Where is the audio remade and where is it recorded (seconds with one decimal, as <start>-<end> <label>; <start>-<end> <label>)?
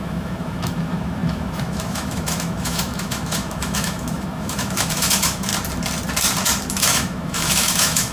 0.0-5.5 remade; 5.5-6.7 recorded; 6.7-8.1 remade